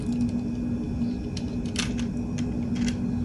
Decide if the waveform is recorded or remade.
recorded